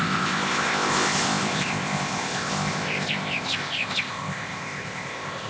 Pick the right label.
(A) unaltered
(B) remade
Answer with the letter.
B